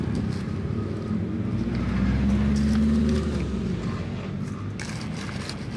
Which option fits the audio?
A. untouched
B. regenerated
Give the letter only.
A